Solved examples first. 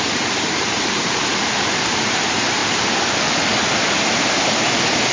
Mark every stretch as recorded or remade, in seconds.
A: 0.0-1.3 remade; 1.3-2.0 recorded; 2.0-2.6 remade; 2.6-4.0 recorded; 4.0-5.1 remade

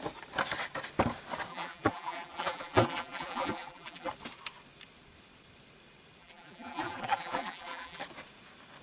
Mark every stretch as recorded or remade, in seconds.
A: 0.0-1.5 recorded; 1.5-4.1 remade; 4.1-6.2 recorded; 6.2-8.0 remade; 8.0-8.8 recorded

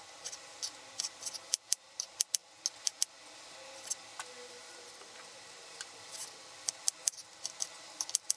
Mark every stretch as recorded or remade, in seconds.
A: 0.0-2.4 remade; 2.4-4.5 recorded; 4.5-8.4 remade

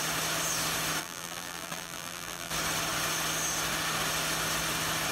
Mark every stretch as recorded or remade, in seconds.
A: 0.0-1.0 recorded; 1.0-2.5 remade; 2.5-5.1 recorded

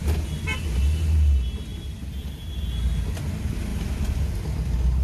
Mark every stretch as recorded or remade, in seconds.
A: 0.0-1.7 recorded; 1.7-2.7 remade; 2.7-3.7 recorded; 3.7-4.5 remade; 4.5-5.0 recorded